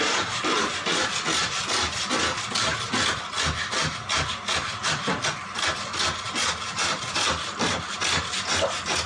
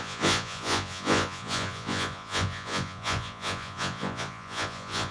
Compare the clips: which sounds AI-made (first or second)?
second